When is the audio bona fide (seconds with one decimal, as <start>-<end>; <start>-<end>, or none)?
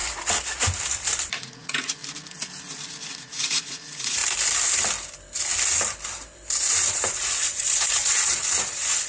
0.0-1.3; 2.0-3.1; 4.2-6.6